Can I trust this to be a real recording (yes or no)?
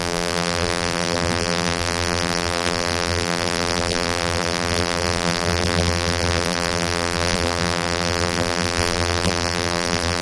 no